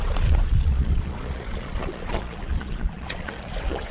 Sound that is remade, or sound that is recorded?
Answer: remade